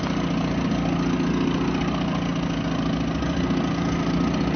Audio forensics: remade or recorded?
recorded